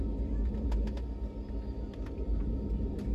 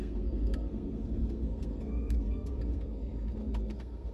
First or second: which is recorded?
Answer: first